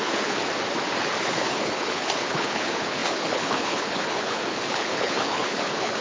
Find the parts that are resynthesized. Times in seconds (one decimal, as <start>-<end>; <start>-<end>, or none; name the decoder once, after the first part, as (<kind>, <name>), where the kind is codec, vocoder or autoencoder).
0.0-0.4 (codec, HILCodec); 1.2-6.0